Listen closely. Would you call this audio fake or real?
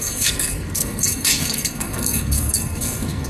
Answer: fake